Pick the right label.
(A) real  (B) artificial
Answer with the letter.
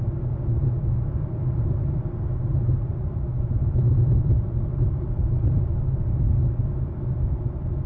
A